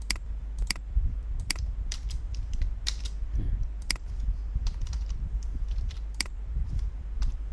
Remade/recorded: remade